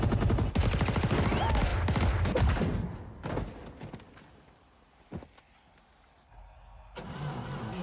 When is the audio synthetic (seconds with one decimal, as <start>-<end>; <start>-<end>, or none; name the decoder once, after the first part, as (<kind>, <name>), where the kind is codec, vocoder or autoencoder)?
none